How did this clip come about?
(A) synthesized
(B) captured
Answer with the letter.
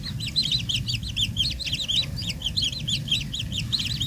B